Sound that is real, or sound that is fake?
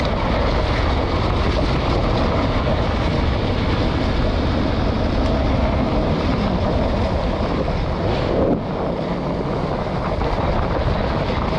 real